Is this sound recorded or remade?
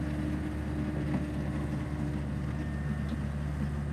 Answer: recorded